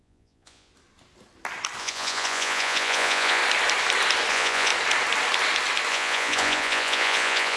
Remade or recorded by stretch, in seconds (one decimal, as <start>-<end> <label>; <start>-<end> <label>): 0.0-0.7 remade; 0.7-1.8 recorded; 1.8-3.4 remade; 3.4-4.3 recorded; 4.3-4.7 remade; 4.7-5.9 recorded; 5.9-7.6 remade